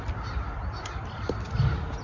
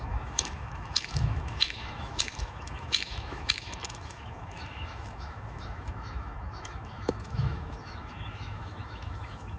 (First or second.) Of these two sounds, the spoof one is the second